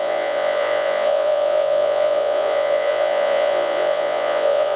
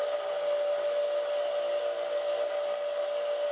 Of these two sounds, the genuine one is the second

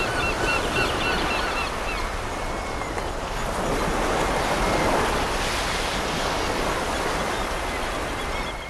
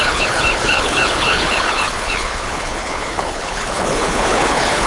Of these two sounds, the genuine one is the first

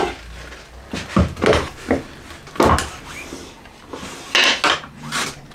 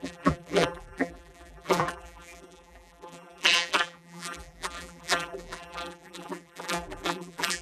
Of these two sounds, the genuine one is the first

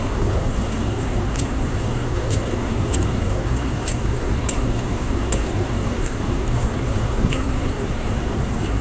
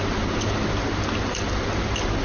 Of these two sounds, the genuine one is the second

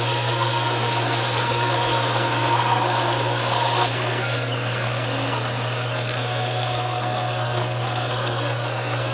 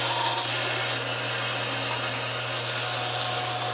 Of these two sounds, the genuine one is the second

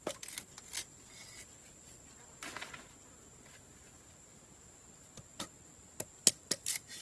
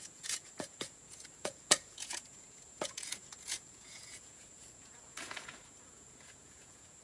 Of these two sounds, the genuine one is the first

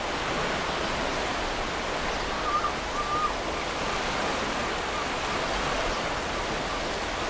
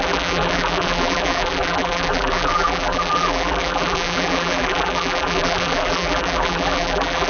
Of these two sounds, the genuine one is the first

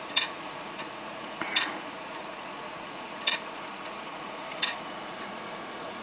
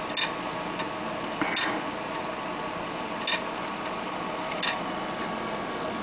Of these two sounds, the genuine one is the second